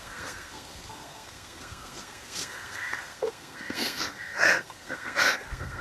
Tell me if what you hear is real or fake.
fake